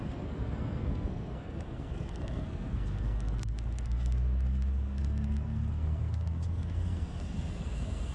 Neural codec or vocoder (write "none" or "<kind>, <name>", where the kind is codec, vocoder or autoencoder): codec, SNAC